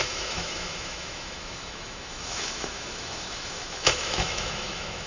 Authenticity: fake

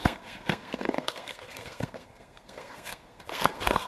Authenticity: fake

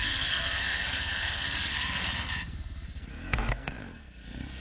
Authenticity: fake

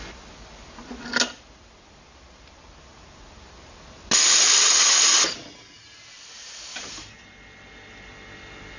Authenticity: real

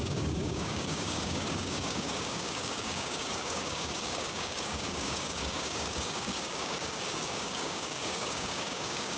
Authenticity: fake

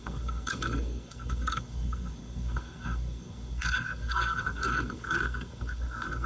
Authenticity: fake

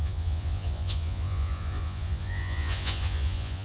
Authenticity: fake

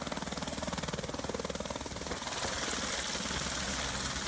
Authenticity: real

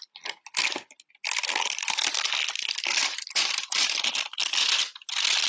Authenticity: real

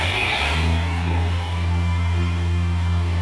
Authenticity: fake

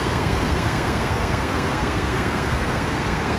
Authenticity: fake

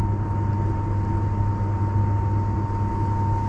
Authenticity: real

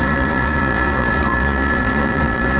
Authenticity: fake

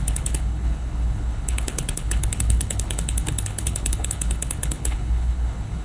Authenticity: fake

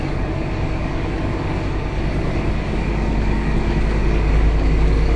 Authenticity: fake